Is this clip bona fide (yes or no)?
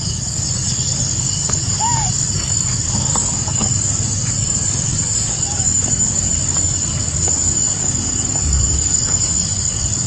no